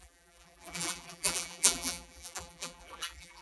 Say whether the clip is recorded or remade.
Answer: remade